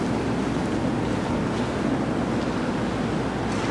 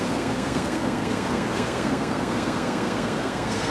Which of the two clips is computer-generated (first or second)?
second